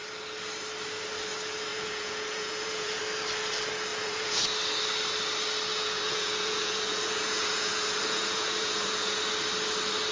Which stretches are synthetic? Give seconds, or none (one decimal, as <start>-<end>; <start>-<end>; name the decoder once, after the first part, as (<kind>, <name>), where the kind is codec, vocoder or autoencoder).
1.7-3.0 (vocoder, Vocos); 3.9-4.4; 5.7-9.2